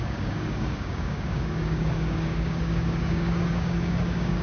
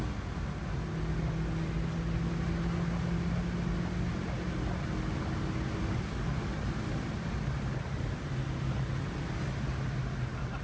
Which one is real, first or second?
second